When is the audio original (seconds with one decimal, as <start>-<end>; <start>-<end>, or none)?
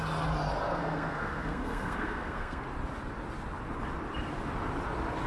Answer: 0.0-0.7; 2.6-5.3